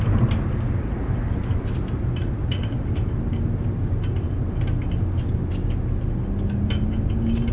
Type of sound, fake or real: real